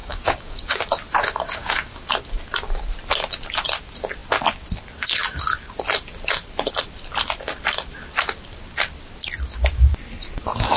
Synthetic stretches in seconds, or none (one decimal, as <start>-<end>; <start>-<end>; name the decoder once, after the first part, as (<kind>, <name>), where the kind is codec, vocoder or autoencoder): 0.0-0.8 (codec, DAC); 1.6-2.1